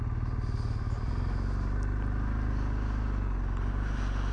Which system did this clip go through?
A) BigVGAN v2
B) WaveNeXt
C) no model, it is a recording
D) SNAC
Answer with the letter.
C